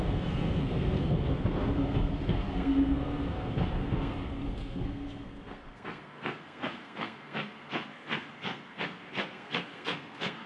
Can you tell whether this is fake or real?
fake